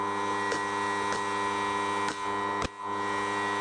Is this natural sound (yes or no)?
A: yes